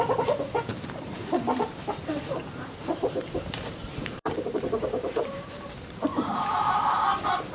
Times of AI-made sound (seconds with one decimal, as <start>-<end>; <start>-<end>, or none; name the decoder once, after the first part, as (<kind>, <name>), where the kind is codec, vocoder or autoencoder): 0.7-1.9 (vocoder, BigVGAN v2); 2.3-6.8